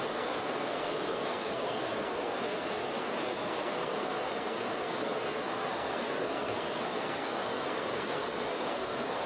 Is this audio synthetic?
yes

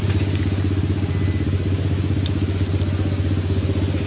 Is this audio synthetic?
no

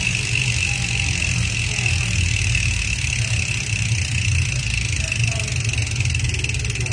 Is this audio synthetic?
no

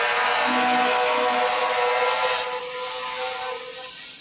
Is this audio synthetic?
no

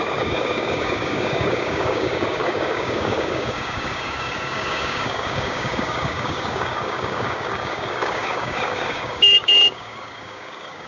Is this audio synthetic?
yes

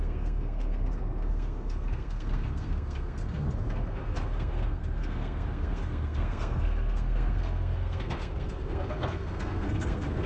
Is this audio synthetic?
yes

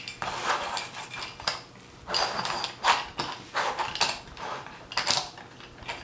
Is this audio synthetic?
no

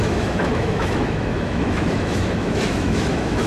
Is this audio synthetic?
yes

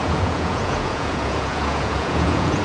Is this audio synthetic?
yes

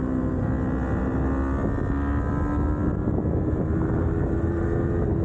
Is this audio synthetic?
no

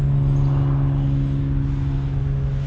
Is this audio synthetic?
no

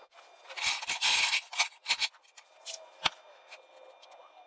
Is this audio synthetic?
no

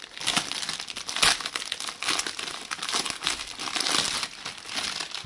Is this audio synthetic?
no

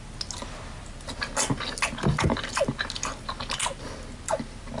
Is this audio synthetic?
no